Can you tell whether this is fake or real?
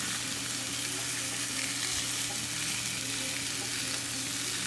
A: real